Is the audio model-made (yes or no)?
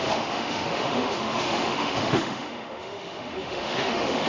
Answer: yes